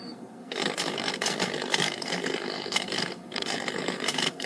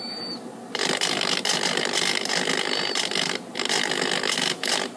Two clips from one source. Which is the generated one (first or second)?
first